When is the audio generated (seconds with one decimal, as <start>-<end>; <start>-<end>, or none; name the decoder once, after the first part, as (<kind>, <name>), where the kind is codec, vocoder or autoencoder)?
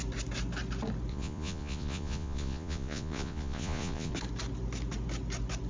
1.1-4.1 (vocoder, Vocos)